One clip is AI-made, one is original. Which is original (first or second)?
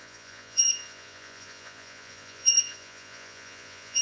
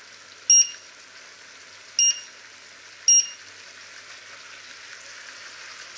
second